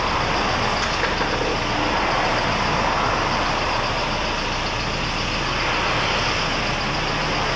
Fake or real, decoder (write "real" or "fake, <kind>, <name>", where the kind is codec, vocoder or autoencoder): real